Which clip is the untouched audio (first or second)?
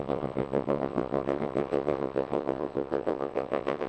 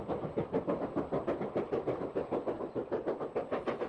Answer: second